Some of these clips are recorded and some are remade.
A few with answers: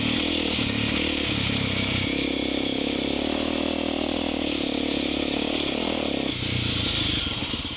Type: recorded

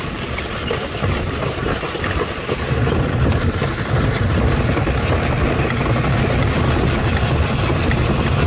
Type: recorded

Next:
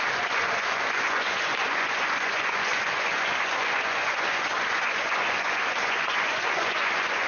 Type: remade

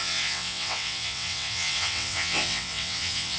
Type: remade